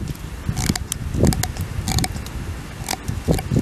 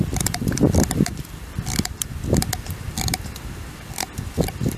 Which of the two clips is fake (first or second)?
second